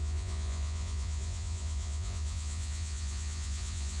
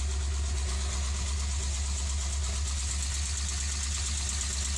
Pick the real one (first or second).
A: second